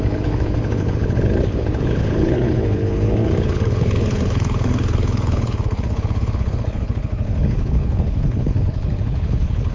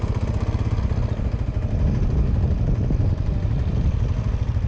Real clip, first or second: second